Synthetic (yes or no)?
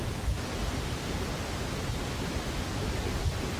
no